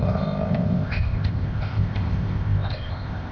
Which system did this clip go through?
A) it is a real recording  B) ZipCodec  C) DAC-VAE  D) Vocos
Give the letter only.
B